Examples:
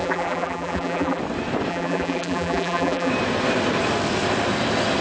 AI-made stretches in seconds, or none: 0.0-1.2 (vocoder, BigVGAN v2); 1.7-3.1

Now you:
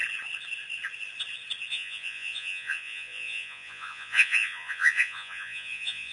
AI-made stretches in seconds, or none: 1.7-6.1 (vocoder, Vocos)

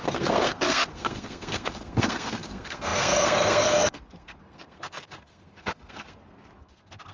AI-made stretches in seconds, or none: 0.0-7.1 (codec, SNAC)

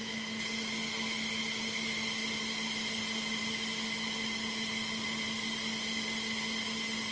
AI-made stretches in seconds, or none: none

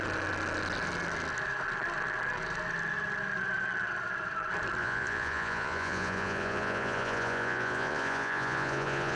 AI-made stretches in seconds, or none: 4.8-9.2 (vocoder, Vocos)

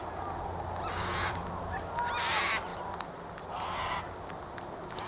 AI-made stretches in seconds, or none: none